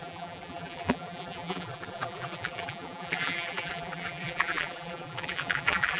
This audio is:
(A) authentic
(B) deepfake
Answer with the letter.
B